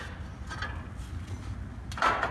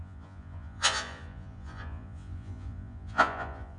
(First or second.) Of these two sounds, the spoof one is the second